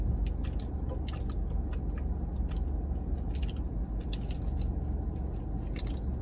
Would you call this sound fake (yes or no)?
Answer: no